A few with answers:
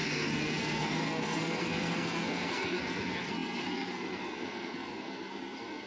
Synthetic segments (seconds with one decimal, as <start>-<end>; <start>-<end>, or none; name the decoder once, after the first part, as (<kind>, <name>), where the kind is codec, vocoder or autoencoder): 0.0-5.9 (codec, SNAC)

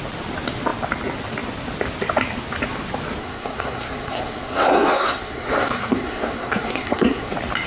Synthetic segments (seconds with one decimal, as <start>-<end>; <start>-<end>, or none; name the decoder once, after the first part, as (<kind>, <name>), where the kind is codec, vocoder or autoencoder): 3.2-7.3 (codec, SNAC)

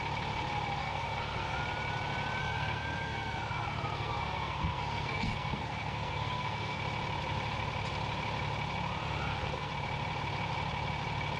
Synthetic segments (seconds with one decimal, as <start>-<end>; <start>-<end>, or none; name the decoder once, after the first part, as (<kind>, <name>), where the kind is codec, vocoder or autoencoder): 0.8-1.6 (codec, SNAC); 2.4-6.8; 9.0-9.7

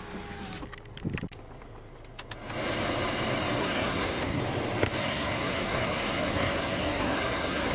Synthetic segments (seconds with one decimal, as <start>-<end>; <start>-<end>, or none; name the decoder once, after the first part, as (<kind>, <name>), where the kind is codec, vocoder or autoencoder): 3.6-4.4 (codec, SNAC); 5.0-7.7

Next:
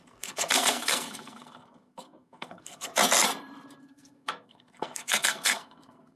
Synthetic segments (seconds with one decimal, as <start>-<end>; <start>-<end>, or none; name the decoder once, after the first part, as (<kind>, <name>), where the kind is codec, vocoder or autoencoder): 0.0-2.9 (codec, SNAC); 3.8-6.2

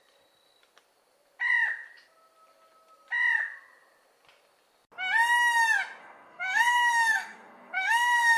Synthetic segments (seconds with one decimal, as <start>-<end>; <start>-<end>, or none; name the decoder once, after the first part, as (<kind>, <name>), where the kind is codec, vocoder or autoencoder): 6.0-8.4 (codec, SNAC)

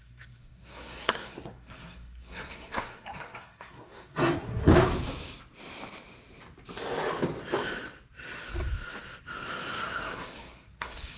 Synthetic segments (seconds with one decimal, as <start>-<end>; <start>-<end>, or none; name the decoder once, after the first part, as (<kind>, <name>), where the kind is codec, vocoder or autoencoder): 0.0-4.7 (codec, SNAC); 9.8-11.2

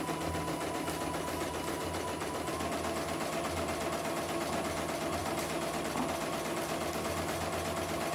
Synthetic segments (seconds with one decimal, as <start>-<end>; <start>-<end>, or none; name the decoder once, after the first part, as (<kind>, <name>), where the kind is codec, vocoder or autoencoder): none